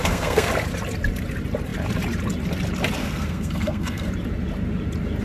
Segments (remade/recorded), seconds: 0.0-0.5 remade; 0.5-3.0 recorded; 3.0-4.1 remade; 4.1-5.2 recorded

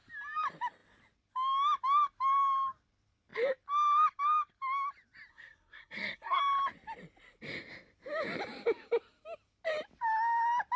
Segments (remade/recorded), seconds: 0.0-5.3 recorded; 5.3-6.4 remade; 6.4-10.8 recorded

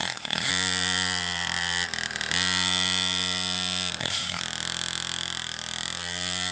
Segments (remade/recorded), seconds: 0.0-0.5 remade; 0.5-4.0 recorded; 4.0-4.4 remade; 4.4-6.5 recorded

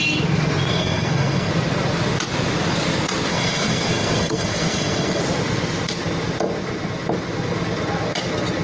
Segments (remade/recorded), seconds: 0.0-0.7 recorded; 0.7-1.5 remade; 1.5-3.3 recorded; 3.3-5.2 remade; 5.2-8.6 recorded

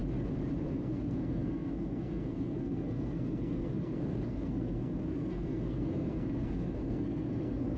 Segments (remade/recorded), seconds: 0.0-0.6 recorded; 0.6-7.8 remade

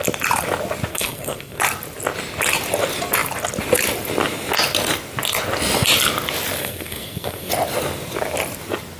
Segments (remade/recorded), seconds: 0.0-0.9 recorded; 0.9-1.6 remade; 1.6-6.6 recorded; 6.6-7.5 remade; 7.5-9.0 recorded

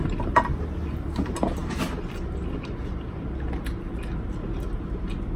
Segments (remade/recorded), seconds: 0.0-5.4 recorded

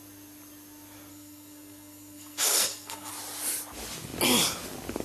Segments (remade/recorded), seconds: 0.0-1.1 recorded; 1.1-3.1 remade; 3.1-5.0 recorded